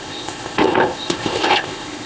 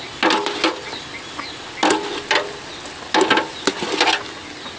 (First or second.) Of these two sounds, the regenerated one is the first